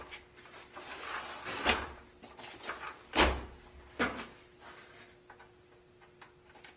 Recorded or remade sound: recorded